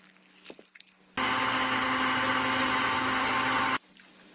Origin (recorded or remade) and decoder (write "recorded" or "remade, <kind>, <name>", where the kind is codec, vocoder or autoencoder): recorded